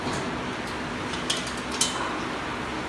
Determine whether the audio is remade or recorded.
recorded